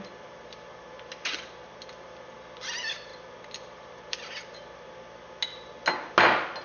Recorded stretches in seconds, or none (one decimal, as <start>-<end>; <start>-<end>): 0.0-6.6